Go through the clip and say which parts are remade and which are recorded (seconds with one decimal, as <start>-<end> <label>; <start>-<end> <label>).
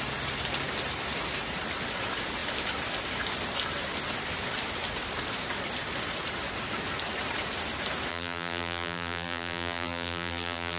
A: 0.0-8.1 recorded; 8.1-10.8 remade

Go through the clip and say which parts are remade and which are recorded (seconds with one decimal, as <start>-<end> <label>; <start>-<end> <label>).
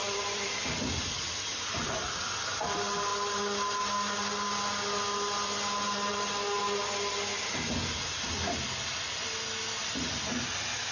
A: 0.0-0.5 remade; 0.5-9.8 recorded; 9.8-10.5 remade; 10.5-10.9 recorded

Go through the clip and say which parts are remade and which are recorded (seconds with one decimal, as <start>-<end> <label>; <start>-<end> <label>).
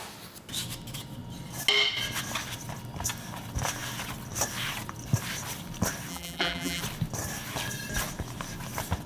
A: 0.0-6.1 recorded; 6.1-6.8 remade; 6.8-9.1 recorded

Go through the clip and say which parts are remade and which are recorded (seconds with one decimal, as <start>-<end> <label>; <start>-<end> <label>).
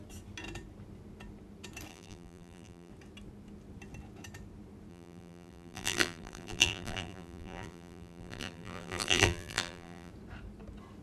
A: 0.0-1.9 recorded; 1.9-2.9 remade; 2.9-4.9 recorded; 4.9-10.1 remade; 10.1-11.0 recorded